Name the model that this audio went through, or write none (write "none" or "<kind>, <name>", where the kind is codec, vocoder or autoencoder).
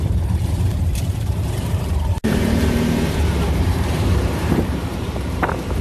vocoder, BigVGAN v2